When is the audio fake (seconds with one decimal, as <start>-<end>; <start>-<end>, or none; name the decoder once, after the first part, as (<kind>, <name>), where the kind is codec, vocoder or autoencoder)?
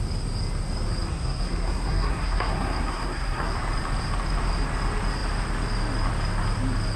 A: 1.1-3.5 (codec, SNAC)